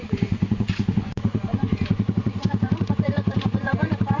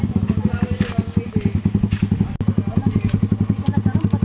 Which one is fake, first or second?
first